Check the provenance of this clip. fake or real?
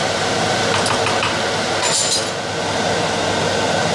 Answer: real